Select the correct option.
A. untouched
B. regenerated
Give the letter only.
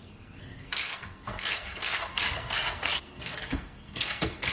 B